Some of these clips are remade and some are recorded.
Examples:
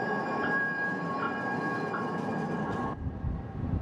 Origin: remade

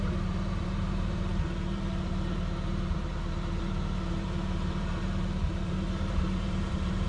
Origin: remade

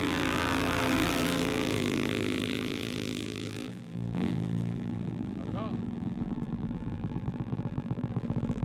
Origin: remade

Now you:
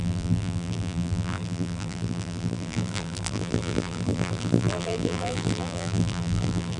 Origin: remade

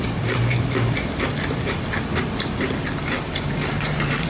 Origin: remade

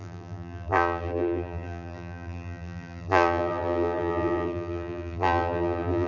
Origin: remade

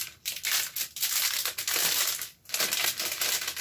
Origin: recorded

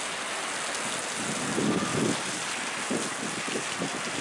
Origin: recorded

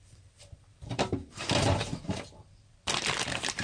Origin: remade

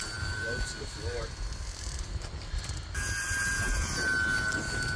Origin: recorded